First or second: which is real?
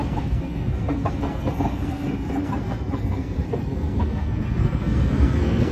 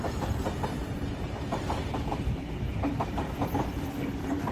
second